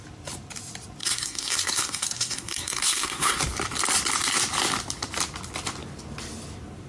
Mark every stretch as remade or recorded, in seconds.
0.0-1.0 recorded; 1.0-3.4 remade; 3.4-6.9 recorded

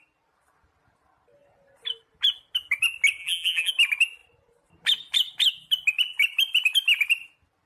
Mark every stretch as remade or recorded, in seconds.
0.0-3.2 recorded; 3.2-3.7 remade; 3.7-7.7 recorded

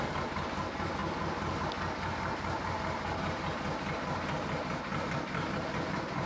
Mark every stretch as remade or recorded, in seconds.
0.0-6.3 recorded